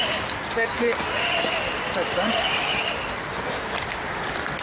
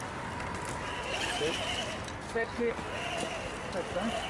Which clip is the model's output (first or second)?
first